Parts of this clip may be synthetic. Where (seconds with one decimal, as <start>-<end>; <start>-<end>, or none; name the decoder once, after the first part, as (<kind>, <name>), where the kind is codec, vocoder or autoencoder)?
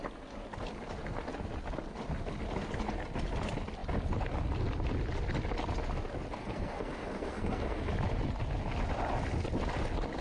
6.4-7.9 (codec, SNAC)